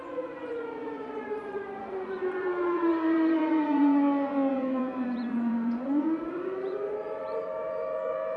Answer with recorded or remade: remade